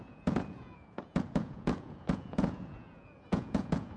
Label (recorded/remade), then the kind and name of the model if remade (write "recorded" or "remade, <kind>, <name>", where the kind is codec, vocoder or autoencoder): remade, vocoder, Vocos